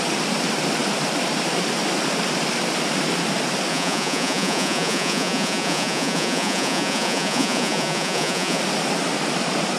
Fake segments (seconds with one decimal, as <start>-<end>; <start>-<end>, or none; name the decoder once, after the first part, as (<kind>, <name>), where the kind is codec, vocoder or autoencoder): 3.7-8.6 (vocoder, Vocos)